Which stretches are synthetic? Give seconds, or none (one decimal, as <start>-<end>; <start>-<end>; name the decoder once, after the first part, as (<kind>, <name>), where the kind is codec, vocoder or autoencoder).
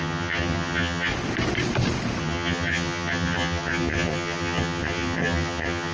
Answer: 0.0-1.1 (vocoder, HiFi-GAN); 2.2-5.9